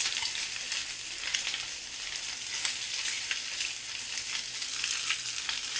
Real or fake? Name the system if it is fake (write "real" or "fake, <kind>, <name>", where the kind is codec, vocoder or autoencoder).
real